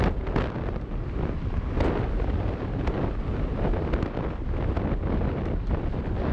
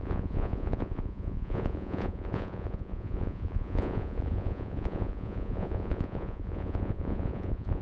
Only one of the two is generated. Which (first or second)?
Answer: second